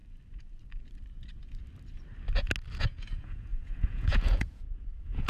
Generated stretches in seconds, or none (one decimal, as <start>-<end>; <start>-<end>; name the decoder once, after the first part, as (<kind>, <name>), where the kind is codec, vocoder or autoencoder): 2.8-5.3 (vocoder, Vocos)